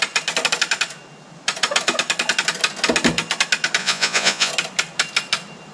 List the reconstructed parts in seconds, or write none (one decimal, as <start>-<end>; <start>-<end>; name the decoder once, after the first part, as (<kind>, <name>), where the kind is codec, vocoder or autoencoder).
3.8-4.5 (vocoder, Vocos)